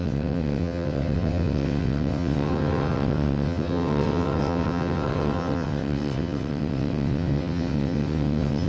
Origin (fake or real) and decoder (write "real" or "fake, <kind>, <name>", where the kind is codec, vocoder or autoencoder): fake, vocoder, WaveNeXt